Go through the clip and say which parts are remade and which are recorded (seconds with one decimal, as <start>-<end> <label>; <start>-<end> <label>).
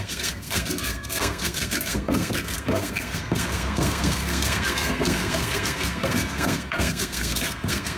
0.0-8.0 remade